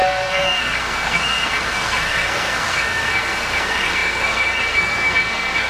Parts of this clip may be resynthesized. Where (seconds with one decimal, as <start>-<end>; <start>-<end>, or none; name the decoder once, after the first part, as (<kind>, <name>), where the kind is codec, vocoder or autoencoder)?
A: 0.0-5.7 (codec, SNAC)